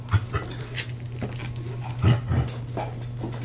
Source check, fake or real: real